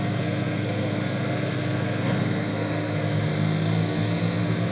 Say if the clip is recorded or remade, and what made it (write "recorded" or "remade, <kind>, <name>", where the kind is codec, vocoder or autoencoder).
remade, codec, SNAC